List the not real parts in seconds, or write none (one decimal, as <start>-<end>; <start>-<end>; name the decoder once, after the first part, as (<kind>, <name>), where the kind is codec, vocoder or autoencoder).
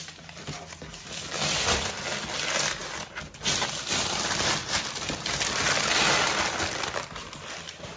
none